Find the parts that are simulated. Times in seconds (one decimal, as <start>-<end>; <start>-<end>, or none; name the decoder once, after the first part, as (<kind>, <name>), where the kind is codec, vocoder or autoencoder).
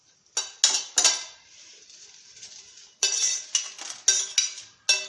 1.7-3.3 (vocoder, BigVGAN v2)